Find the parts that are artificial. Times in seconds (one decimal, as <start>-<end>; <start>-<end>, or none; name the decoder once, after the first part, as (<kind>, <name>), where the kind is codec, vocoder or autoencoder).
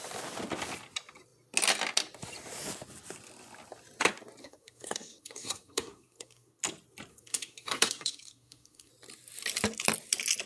4.4-6.6 (codec, SNAC); 7.1-8.9